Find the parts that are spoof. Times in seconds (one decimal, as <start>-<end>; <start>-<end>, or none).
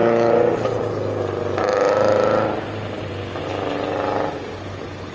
none